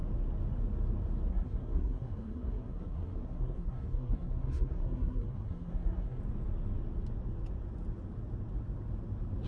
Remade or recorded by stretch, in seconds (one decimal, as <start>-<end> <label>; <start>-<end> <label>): 0.0-1.3 recorded; 1.3-6.2 remade; 6.2-9.5 recorded